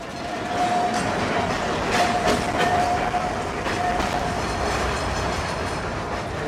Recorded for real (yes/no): yes